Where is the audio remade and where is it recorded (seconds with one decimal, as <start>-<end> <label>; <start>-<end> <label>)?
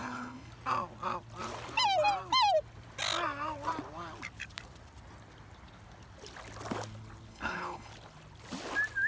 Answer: 0.0-0.5 remade; 0.5-7.3 recorded; 7.3-7.9 remade; 7.9-9.1 recorded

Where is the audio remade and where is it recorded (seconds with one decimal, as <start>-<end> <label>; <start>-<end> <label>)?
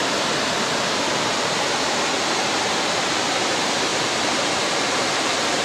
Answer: 0.0-5.6 remade